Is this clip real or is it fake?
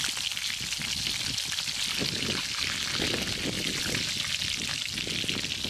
real